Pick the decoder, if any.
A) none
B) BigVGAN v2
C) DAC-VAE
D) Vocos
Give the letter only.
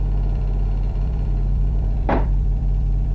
B